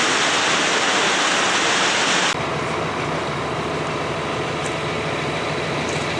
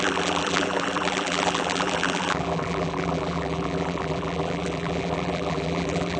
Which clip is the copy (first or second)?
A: second